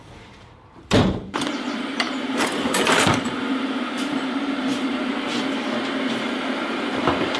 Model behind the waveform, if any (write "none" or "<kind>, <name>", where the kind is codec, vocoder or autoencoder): vocoder, BigVGAN v2